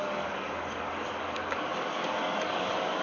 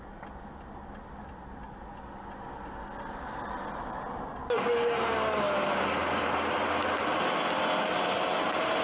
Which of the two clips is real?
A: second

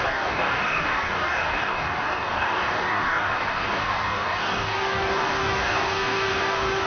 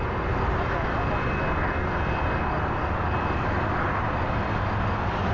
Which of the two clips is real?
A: second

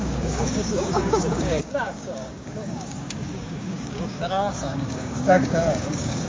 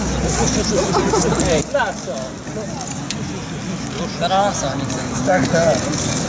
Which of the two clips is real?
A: second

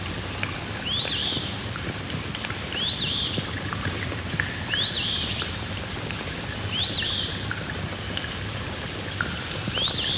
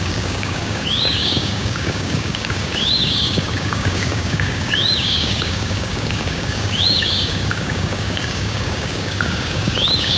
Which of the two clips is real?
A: first